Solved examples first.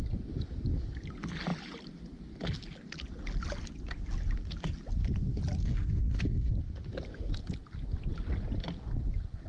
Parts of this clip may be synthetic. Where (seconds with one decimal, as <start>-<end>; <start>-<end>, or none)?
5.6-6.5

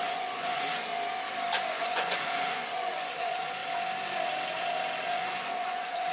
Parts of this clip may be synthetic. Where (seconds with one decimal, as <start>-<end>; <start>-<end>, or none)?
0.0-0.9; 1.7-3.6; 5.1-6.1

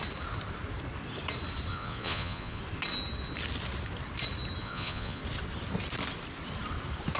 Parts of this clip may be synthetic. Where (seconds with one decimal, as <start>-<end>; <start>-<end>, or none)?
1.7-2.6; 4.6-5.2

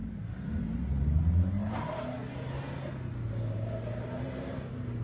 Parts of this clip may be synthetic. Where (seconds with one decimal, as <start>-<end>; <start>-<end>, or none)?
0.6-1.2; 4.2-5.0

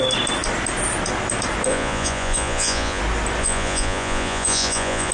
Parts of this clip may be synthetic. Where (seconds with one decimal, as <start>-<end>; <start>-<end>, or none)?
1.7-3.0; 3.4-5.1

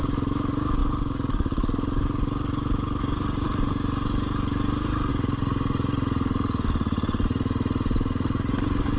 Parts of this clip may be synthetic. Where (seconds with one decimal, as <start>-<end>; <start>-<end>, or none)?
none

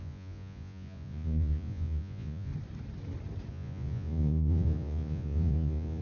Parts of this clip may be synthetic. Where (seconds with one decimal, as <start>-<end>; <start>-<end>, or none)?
0.0-2.5; 3.5-6.0